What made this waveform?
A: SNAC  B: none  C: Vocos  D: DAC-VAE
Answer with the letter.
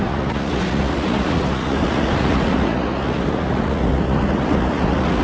C